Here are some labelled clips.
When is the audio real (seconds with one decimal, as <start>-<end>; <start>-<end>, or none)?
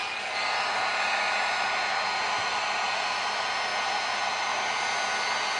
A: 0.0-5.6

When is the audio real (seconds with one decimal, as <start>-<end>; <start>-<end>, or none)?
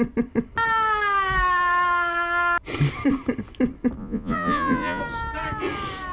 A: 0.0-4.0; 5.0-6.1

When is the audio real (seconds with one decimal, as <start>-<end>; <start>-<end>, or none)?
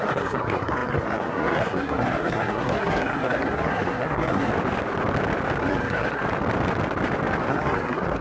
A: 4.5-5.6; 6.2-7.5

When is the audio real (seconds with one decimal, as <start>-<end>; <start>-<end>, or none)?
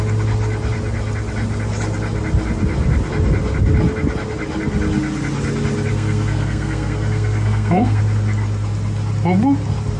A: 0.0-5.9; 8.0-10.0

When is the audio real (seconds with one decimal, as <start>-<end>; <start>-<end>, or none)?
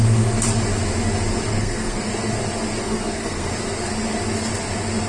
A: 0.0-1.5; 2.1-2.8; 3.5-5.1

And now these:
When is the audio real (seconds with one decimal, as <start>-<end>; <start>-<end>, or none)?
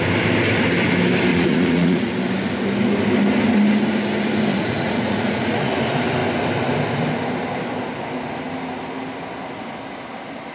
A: 0.0-1.3; 2.1-4.5; 5.7-10.5